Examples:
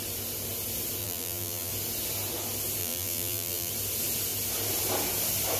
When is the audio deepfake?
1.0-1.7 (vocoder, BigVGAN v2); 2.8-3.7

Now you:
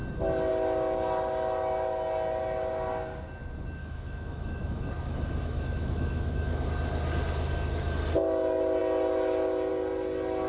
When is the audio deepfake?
3.8-6.6 (autoencoder, DAC-VAE)